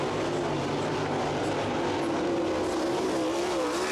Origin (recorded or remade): recorded